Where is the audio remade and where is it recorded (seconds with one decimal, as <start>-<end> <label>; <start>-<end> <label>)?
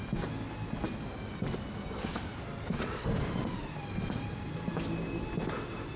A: 0.0-3.6 recorded; 3.6-6.0 remade